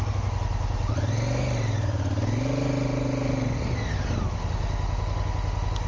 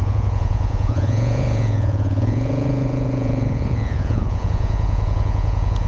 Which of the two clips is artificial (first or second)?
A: second